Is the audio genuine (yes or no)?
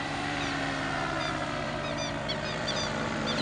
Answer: no